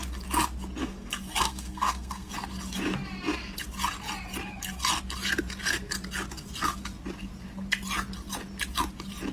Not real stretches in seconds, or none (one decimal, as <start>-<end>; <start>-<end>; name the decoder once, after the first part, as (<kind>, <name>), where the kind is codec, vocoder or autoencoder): 0.8-2.3 (codec, SNAC)